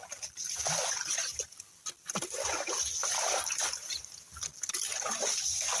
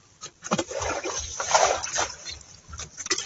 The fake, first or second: second